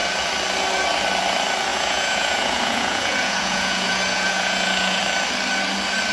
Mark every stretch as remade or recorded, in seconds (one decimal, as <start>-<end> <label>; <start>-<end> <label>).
0.0-1.7 recorded; 1.7-5.0 remade; 5.0-6.1 recorded

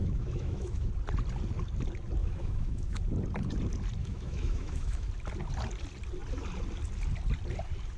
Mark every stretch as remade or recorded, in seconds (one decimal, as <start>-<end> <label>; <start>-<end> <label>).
0.0-0.9 remade; 0.9-2.2 recorded; 2.2-3.0 remade; 3.0-4.0 recorded; 4.0-5.1 remade; 5.1-8.0 recorded

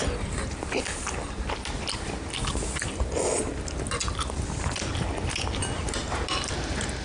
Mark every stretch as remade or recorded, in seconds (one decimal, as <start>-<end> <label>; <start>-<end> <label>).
0.0-7.0 recorded

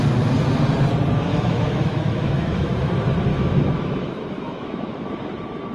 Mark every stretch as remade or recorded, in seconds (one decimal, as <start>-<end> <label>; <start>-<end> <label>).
0.0-1.3 recorded; 1.3-2.9 remade; 2.9-3.3 recorded; 3.3-5.1 remade; 5.1-5.7 recorded

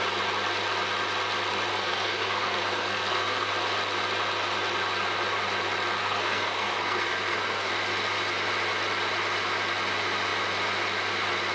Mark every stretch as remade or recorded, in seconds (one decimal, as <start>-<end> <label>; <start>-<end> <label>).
0.0-1.7 recorded; 1.7-3.5 remade; 3.5-6.0 recorded; 6.0-7.7 remade; 7.7-11.5 recorded

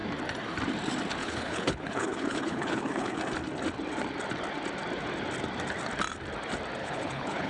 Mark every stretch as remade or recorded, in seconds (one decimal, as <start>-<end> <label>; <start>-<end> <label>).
0.0-1.2 recorded; 1.2-3.2 remade; 3.2-6.8 recorded; 6.8-7.5 remade

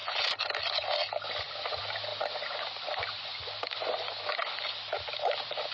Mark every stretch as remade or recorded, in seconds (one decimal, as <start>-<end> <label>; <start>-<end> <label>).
0.0-5.7 recorded

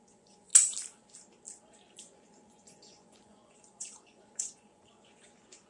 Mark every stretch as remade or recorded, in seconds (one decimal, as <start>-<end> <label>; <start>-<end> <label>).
0.0-0.5 remade; 0.5-2.0 recorded; 2.0-5.7 remade